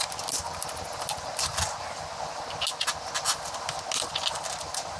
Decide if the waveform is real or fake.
real